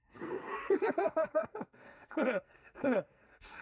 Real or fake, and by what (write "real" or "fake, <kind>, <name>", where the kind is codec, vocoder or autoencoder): fake, codec, SNAC